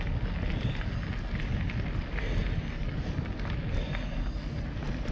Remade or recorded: recorded